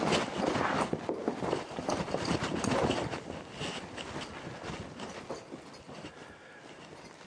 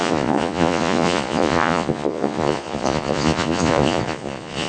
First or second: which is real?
first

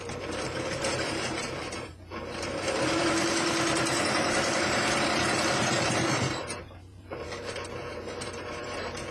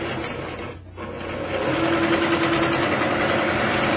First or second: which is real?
second